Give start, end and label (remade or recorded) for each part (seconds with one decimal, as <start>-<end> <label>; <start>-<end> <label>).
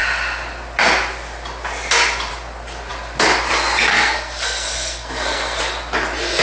0.0-3.9 recorded; 3.9-5.6 remade; 5.6-6.4 recorded